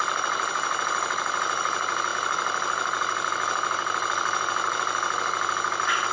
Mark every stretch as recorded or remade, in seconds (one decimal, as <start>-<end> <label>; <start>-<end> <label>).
0.0-6.1 recorded

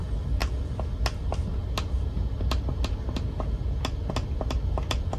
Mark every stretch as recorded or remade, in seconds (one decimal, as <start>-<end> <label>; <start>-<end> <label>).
0.0-5.2 recorded

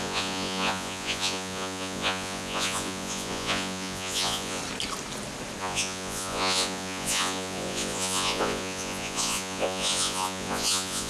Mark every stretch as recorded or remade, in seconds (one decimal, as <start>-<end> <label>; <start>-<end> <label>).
0.0-4.6 remade; 4.6-5.6 recorded; 5.6-11.1 remade

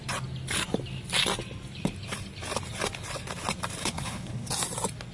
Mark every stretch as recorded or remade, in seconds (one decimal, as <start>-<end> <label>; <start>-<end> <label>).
0.0-3.8 recorded; 3.8-4.5 remade; 4.5-5.1 recorded

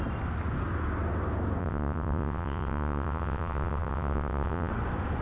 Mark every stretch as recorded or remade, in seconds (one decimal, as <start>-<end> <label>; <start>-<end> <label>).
0.0-1.6 recorded; 1.6-4.7 remade; 4.7-5.2 recorded

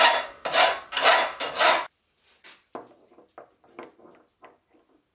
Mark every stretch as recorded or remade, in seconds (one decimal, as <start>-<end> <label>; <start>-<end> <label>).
0.0-5.1 recorded